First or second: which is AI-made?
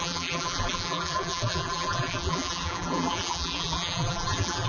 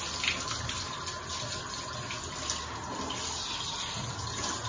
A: first